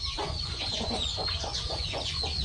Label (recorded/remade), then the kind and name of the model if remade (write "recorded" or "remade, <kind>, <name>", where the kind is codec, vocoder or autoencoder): remade, vocoder, Vocos